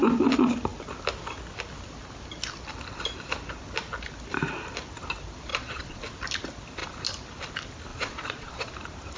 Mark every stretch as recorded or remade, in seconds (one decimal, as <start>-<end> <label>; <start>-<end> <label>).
0.0-5.5 recorded; 5.5-6.0 remade; 6.0-7.9 recorded; 7.9-8.7 remade; 8.7-9.2 recorded

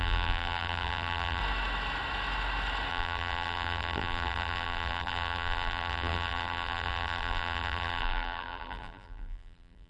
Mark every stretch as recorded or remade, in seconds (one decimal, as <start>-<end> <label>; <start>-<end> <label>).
0.0-1.4 remade; 1.4-2.9 recorded; 2.9-9.9 remade